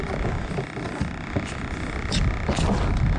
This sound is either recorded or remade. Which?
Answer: recorded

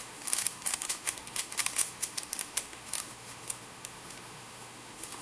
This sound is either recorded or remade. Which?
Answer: remade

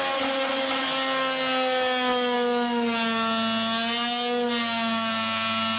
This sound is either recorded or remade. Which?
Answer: recorded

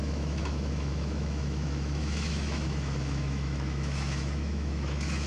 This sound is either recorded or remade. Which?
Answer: remade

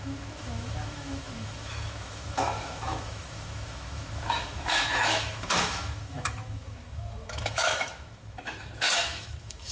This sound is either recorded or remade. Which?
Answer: remade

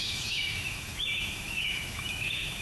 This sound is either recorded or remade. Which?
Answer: remade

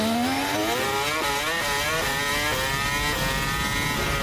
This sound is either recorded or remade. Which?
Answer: recorded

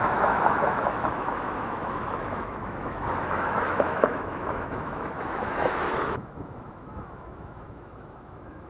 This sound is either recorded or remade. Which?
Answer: remade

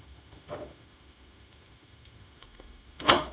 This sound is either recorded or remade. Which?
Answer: remade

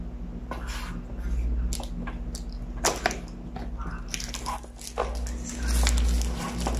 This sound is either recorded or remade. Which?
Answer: recorded